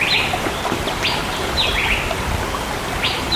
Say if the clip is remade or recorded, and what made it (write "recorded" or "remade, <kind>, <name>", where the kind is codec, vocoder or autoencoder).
recorded